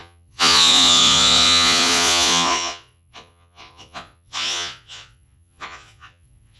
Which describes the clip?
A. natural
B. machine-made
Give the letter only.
B